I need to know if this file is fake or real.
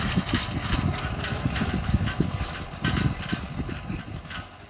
fake